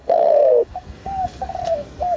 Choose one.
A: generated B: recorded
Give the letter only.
A